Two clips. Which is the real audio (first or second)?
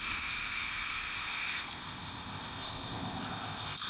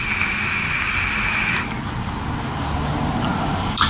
second